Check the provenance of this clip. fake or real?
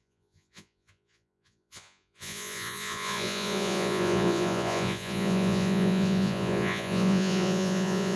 fake